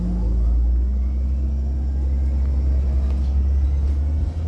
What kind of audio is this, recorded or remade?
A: recorded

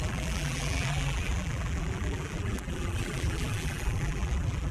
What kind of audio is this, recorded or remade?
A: remade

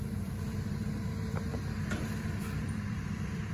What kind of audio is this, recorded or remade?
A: remade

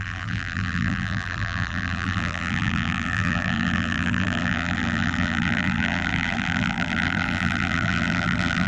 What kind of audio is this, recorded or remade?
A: remade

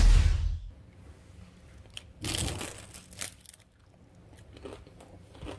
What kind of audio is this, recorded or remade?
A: recorded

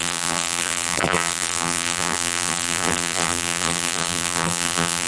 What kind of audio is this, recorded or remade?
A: remade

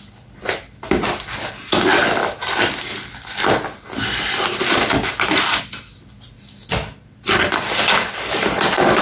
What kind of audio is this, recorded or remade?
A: recorded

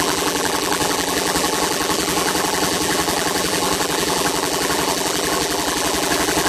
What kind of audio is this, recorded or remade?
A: remade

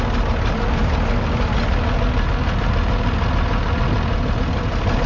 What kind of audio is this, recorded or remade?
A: recorded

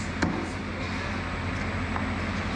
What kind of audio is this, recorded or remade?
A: recorded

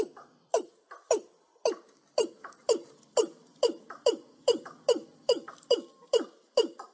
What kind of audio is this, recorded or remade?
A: remade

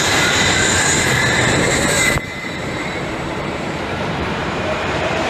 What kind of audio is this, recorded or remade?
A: remade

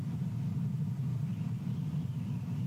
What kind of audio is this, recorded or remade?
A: recorded